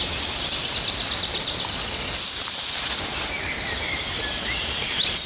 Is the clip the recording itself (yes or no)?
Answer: yes